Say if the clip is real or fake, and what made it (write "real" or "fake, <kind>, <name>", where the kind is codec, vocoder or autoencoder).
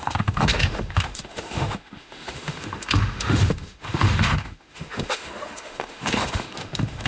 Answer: fake, autoencoder, DAC-VAE